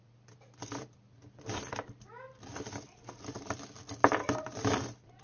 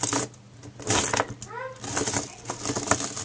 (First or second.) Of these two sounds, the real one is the second